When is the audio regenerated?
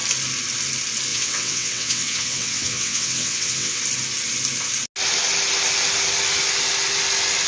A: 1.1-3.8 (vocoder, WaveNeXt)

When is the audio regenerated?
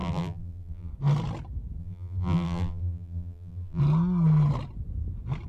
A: 0.0-0.9 (vocoder, BigVGAN v2); 1.8-3.8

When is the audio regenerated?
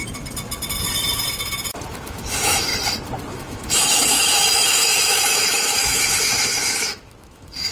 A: 1.9-2.7 (autoencoder, DAC-VAE); 3.3-7.7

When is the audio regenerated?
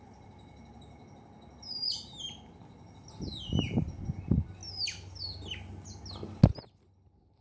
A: none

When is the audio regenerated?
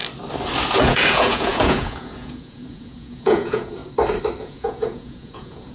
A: 0.8-3.8 (vocoder, Vocos); 4.4-5.7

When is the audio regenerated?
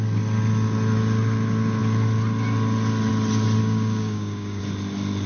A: 3.6-4.6 (codec, DAC)